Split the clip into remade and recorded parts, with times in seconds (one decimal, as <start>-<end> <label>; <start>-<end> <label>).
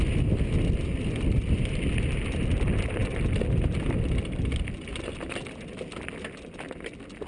0.0-7.3 recorded